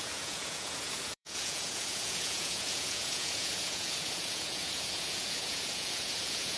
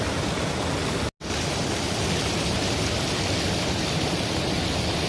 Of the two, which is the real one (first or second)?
second